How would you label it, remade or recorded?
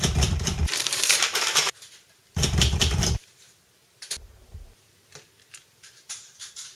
remade